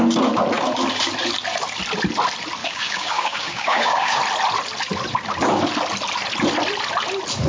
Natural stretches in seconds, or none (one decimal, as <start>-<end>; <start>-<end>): 0.0-2.6; 4.2-7.5